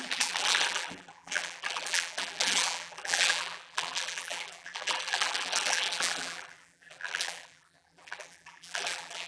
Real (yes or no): no